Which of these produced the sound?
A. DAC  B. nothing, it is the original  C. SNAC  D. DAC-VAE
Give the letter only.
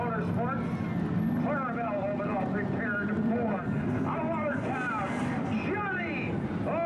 B